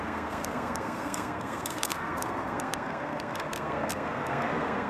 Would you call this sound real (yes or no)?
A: no